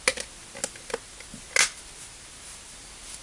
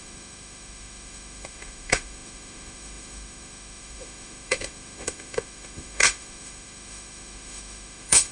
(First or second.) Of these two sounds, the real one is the first